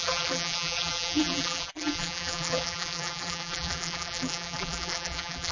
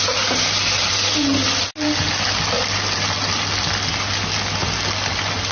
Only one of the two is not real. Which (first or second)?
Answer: first